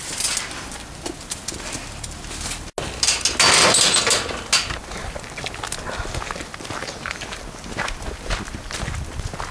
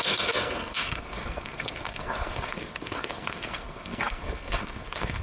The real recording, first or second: first